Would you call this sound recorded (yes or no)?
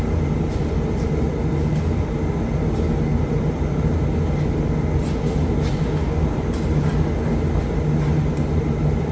yes